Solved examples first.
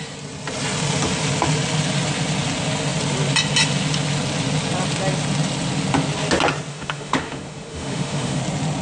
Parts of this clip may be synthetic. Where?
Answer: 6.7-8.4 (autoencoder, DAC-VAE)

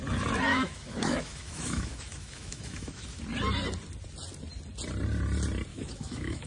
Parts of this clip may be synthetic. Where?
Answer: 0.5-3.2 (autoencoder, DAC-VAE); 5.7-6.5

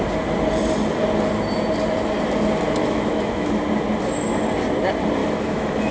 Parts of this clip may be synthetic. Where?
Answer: 2.8-3.5 (autoencoder, DAC-VAE); 5.2-5.9

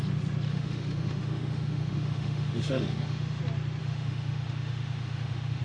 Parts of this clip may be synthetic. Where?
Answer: 0.5-3.4 (autoencoder, DAC-VAE); 3.8-5.6

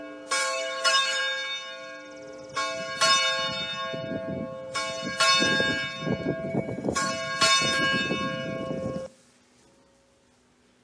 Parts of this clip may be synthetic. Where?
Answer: 0.4-1.2 (autoencoder, DAC-VAE); 6.5-7.1

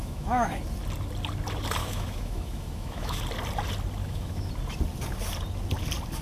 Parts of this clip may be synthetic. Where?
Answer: 0.0-0.6 (autoencoder, DAC-VAE); 1.8-3.2; 4.0-4.5

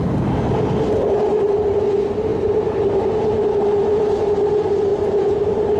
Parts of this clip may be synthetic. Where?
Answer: none